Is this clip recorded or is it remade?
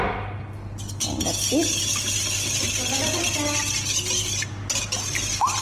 recorded